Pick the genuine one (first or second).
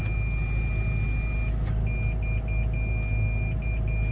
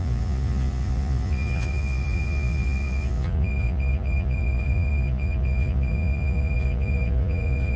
first